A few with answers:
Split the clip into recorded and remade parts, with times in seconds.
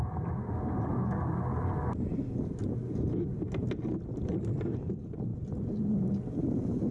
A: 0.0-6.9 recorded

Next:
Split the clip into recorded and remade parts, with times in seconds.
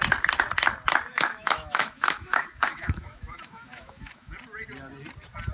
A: 0.0-1.1 recorded; 1.1-4.3 remade; 4.3-5.5 recorded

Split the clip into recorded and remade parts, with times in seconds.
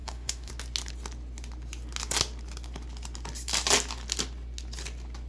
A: 0.0-0.5 remade; 0.5-5.3 recorded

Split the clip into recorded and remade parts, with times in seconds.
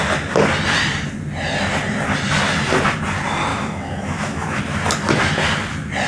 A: 0.0-3.5 recorded; 3.5-4.6 remade; 4.6-6.1 recorded